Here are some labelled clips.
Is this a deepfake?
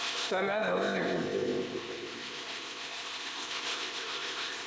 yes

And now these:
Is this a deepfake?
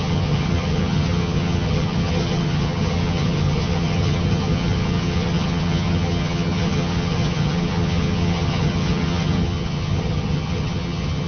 yes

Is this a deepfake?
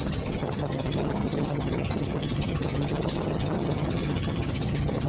yes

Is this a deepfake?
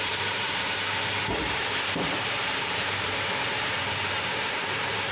yes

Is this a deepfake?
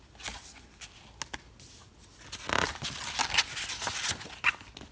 no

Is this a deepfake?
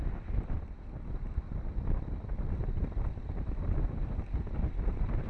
no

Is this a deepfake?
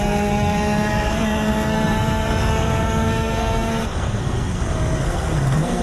yes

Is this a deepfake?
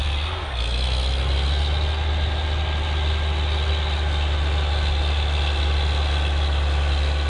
no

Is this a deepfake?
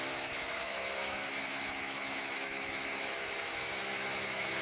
yes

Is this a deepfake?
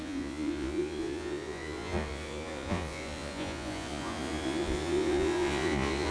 yes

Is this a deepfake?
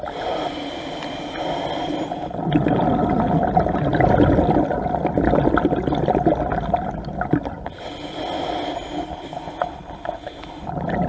no